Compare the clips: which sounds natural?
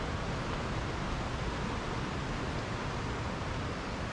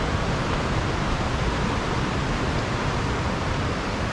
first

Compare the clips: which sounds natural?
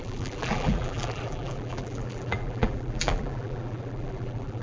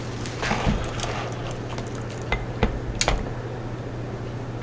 second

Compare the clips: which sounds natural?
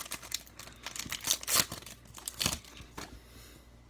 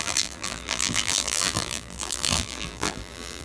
first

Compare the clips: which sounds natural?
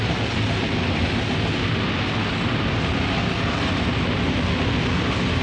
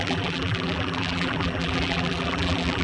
first